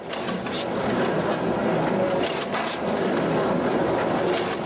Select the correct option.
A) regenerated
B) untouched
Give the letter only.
B